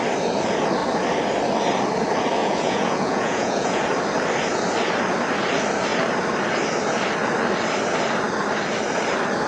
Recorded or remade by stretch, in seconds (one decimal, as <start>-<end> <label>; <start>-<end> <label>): 0.0-2.4 recorded; 2.4-3.9 remade; 3.9-9.5 recorded